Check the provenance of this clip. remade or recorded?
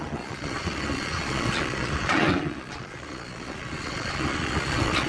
remade